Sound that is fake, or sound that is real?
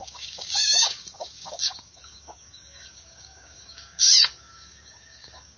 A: fake